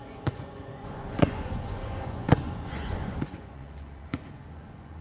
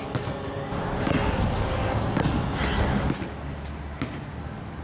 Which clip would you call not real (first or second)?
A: first